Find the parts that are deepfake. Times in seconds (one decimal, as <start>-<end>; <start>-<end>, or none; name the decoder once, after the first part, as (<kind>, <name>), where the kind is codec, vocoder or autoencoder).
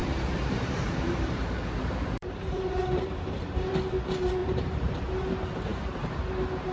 0.0-3.7 (vocoder, BigVGAN v2); 4.4-5.3; 5.7-6.3